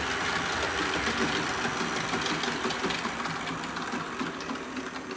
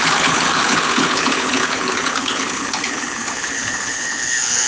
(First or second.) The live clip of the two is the first